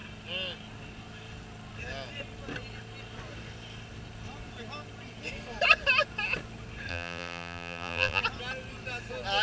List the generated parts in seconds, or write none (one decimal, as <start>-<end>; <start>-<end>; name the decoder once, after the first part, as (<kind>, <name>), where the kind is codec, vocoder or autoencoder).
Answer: 6.9-8.2 (vocoder, BigVGAN v2)